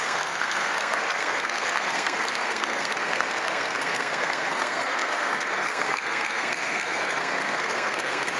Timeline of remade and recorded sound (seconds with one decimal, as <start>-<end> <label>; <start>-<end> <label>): 0.0-8.4 remade